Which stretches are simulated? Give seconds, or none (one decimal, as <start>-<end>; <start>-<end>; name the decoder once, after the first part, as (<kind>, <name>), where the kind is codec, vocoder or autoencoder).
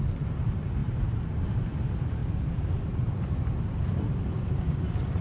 0.0-2.2 (vocoder, BigVGAN v2); 2.8-5.2